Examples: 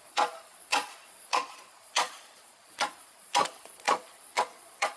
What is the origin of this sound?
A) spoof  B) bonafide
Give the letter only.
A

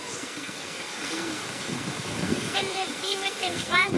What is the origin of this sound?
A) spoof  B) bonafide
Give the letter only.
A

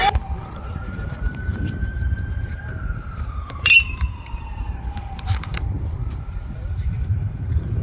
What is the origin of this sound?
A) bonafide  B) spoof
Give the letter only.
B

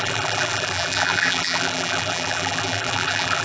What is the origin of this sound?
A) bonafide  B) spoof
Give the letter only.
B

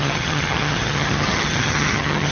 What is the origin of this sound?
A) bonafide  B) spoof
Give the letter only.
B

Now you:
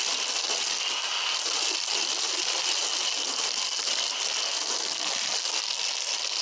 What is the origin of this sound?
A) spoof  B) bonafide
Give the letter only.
B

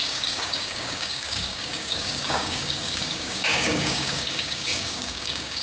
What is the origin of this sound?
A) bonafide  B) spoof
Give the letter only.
B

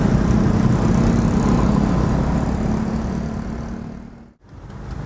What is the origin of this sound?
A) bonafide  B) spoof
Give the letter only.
A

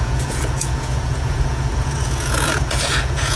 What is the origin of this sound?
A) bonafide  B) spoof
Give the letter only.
B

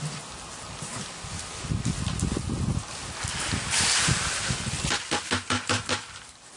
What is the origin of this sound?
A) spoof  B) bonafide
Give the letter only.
B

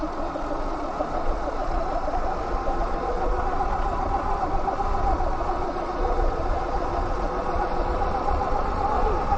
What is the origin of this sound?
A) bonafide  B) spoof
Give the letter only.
B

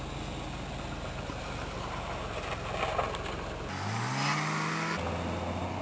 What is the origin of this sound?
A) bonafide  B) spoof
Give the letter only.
A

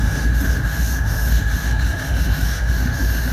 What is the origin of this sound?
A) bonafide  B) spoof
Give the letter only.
B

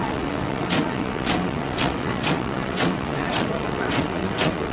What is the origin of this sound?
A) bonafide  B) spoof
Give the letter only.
B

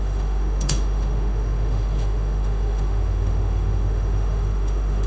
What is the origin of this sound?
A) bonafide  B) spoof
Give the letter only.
B